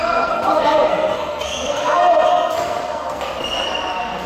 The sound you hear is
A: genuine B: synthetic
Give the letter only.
B